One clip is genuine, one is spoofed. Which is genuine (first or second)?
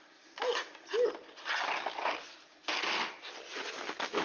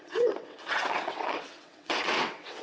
first